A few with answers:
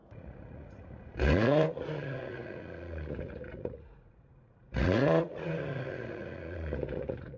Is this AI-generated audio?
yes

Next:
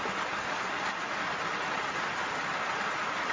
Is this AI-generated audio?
no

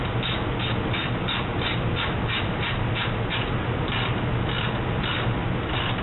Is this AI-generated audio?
no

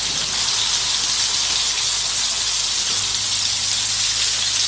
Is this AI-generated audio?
no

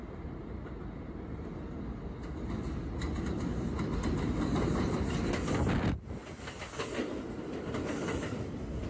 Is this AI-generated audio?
no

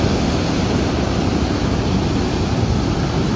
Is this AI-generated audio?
no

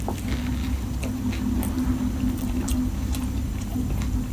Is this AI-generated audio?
no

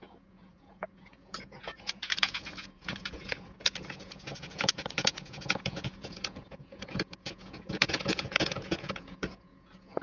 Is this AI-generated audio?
yes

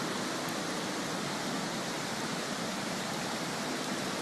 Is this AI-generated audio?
no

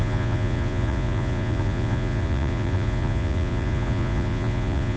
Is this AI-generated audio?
yes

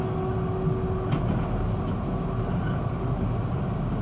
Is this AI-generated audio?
no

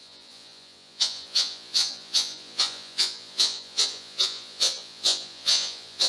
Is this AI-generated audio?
yes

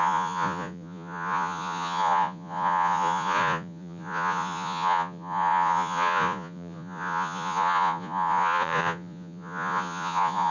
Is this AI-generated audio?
yes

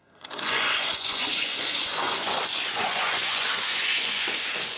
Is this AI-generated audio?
yes